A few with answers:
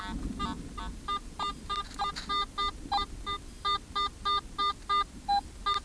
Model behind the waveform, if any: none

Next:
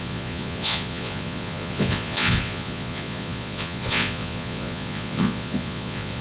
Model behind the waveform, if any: vocoder, Vocos